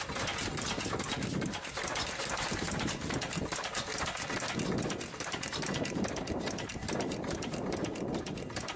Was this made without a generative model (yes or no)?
yes